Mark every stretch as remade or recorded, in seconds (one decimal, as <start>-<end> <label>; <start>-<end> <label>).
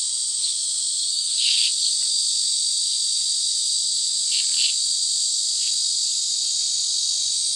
0.0-1.1 recorded; 1.1-1.7 remade; 1.7-7.6 recorded